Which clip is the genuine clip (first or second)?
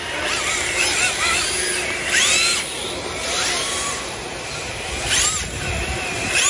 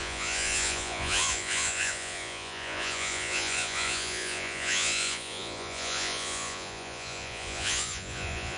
first